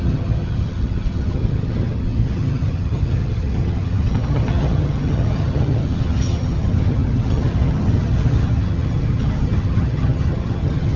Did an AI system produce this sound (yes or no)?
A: yes